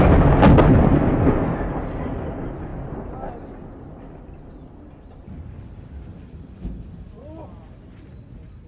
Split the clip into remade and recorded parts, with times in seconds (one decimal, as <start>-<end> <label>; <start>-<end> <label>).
0.0-8.7 recorded